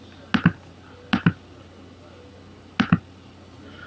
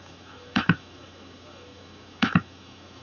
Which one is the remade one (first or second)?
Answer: second